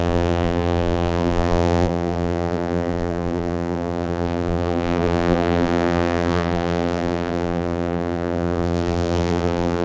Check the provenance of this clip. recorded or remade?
remade